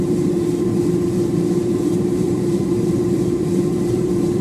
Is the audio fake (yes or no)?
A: yes